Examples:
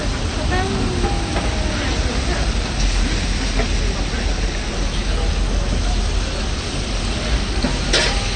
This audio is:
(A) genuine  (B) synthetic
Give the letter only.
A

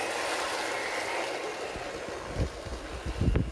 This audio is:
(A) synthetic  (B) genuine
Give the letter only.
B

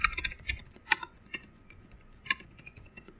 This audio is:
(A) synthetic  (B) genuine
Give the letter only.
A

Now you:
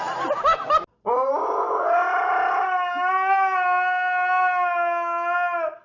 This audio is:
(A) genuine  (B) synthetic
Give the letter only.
A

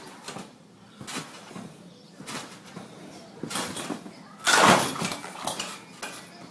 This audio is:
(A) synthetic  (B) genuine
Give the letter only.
B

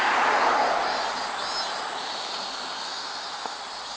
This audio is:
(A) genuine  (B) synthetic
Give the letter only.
A